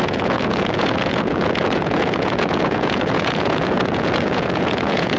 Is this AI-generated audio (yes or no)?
yes